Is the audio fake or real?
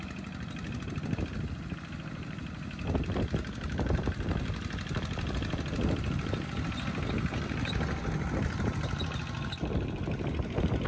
real